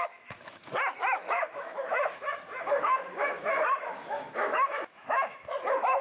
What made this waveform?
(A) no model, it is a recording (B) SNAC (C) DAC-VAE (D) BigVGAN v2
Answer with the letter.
C